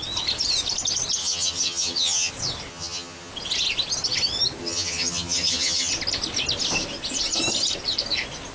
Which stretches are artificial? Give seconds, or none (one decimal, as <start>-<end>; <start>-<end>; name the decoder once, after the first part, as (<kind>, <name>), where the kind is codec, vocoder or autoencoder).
1.2-2.3 (vocoder, HiFi-GAN); 2.7-3.3; 4.6-5.9